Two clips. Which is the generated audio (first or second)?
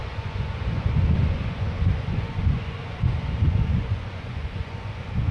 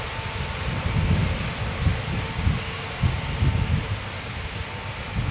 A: first